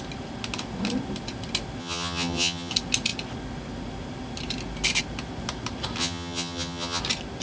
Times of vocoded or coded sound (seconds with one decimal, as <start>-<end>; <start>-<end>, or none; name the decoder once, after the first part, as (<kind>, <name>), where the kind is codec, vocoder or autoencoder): 1.8-2.7 (vocoder, HiFi-GAN); 6.0-7.0